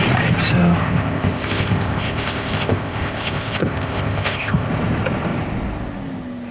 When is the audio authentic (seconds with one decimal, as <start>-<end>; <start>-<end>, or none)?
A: 0.0-0.8; 4.7-6.5